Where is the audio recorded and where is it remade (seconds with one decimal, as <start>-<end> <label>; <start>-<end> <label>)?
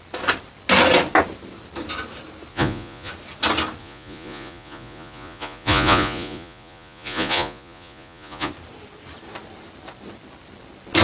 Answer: 0.0-2.5 recorded; 2.5-3.1 remade; 3.1-3.8 recorded; 3.8-8.5 remade; 8.5-11.0 recorded